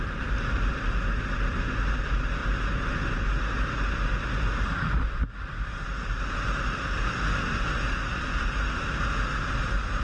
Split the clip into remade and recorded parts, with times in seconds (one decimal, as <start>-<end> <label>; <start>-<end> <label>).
0.0-10.0 recorded